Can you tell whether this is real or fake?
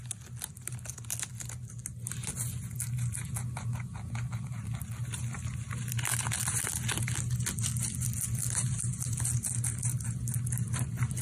real